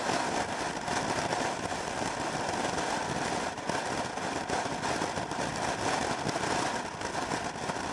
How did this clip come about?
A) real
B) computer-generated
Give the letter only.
B